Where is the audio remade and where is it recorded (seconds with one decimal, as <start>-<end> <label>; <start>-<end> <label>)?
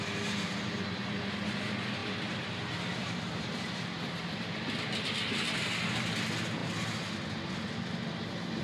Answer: 0.0-2.0 recorded; 2.0-5.6 remade; 5.6-8.6 recorded